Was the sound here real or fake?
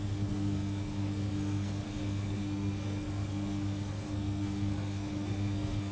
fake